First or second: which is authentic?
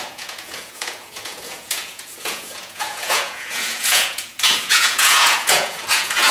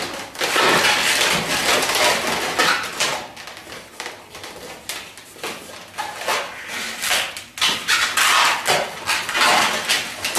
second